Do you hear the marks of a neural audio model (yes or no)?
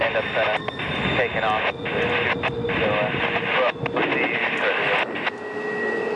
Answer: no